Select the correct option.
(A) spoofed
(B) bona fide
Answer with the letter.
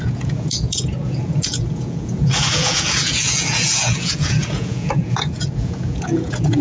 A